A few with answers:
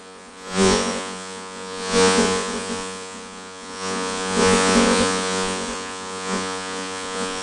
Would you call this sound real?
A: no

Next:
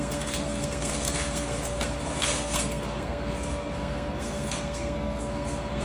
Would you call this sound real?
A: no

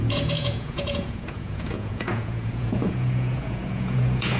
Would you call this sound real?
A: no